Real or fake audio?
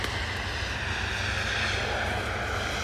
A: real